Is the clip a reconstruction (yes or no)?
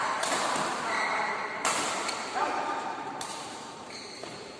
yes